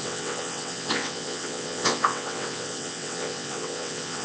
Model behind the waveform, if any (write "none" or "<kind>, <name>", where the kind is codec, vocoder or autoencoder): vocoder, WaveNeXt